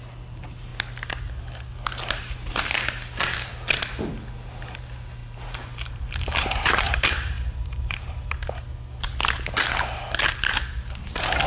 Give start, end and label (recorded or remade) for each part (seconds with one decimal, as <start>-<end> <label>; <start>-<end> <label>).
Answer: 0.0-5.2 recorded; 5.2-8.1 remade; 8.1-11.5 recorded